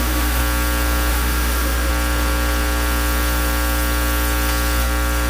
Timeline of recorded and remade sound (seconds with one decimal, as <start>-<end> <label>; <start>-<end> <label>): 0.0-0.4 remade; 0.4-1.1 recorded; 1.1-1.9 remade; 1.9-5.3 recorded